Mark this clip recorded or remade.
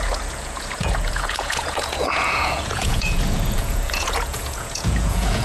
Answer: remade